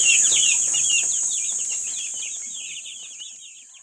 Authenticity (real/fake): real